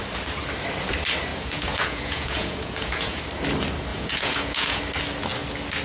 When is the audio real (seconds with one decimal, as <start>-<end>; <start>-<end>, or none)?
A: 0.0-1.3; 3.2-3.9; 4.8-5.8